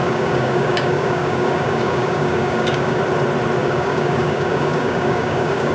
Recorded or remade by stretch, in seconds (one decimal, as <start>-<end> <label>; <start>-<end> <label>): 0.0-3.0 remade; 3.0-3.6 recorded; 3.6-5.7 remade